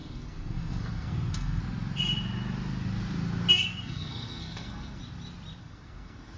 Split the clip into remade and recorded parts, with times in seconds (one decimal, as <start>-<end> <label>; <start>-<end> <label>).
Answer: 0.0-1.6 remade; 1.6-3.7 recorded; 3.7-5.0 remade; 5.0-5.6 recorded; 5.6-6.4 remade